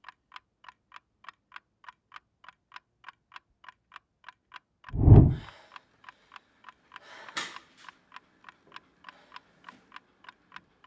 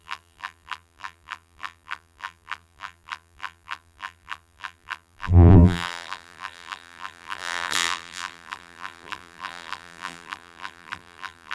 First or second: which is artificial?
second